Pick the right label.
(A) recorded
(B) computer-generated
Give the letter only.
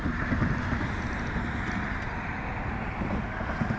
A